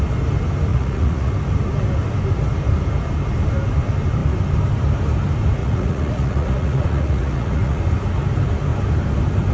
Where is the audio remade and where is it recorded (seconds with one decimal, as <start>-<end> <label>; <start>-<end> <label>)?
0.0-0.7 recorded; 0.7-1.3 remade; 1.3-5.6 recorded; 5.6-7.8 remade; 7.8-9.5 recorded